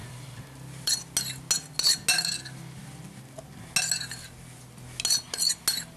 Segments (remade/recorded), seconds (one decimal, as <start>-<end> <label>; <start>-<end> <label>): 0.0-0.9 remade; 0.9-6.0 recorded